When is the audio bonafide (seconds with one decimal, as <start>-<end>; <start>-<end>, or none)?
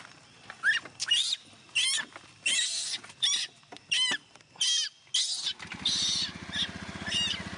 0.0-7.6